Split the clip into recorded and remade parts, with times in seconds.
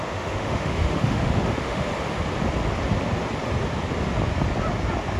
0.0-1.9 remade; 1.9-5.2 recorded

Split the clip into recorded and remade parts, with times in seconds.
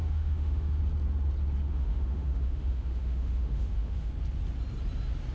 0.0-0.8 remade; 0.8-1.7 recorded; 1.7-4.1 remade; 4.1-5.3 recorded